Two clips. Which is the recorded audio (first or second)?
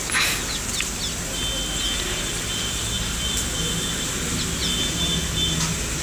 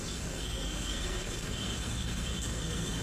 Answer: first